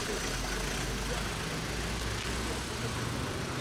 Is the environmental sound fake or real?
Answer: real